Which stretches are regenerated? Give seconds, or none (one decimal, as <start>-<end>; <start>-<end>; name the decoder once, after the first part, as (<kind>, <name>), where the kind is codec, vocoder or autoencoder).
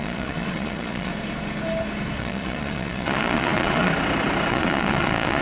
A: 0.0-1.1 (vocoder, Vocos); 2.2-3.9; 4.5-5.4